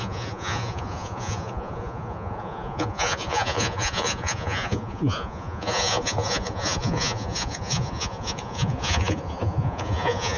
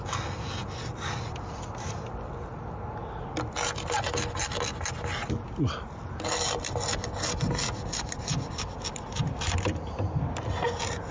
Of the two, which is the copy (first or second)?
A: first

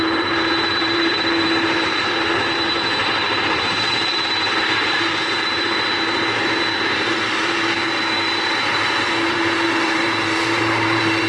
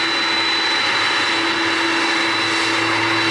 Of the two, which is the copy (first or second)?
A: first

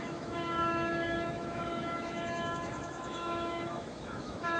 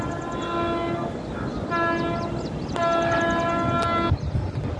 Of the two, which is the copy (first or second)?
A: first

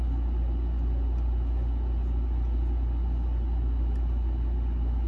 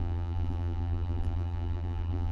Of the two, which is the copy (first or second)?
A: second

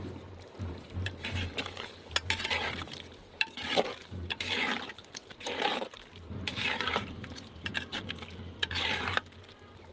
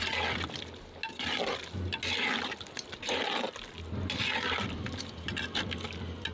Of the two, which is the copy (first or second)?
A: first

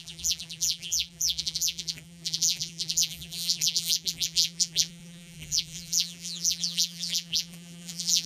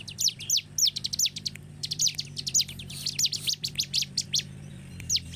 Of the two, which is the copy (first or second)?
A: first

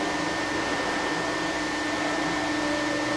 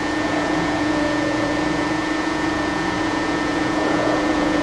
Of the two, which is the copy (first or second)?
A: second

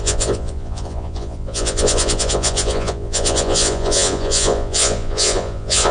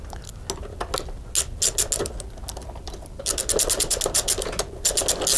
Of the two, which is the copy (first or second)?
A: first